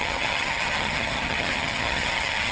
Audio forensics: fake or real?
fake